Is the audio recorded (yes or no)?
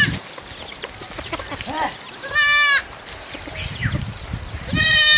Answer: yes